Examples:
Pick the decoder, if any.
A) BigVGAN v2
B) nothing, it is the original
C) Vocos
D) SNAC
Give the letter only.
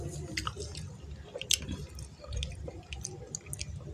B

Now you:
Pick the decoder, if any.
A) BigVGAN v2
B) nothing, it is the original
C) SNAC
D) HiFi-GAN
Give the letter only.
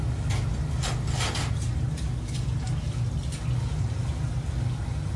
B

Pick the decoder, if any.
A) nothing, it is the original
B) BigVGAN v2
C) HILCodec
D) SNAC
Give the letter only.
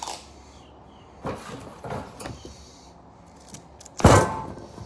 A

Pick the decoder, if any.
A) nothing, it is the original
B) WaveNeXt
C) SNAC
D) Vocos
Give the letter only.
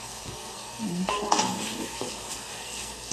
C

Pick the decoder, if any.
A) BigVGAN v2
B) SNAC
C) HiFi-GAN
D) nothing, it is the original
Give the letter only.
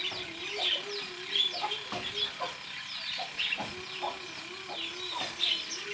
D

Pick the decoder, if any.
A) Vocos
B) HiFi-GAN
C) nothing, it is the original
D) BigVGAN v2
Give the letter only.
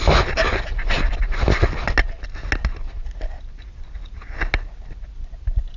C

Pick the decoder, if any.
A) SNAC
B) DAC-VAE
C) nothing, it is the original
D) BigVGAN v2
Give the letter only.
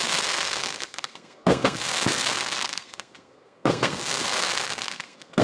A